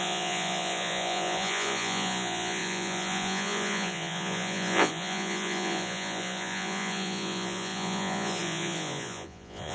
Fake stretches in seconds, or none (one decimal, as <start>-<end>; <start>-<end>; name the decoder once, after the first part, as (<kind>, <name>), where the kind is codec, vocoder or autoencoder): 0.0-9.7 (vocoder, Vocos)